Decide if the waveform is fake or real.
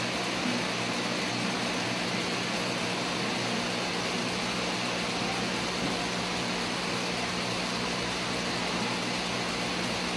real